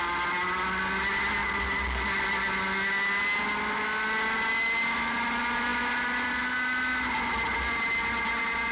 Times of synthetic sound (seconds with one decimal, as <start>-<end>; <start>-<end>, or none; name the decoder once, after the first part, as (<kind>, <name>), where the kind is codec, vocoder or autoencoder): none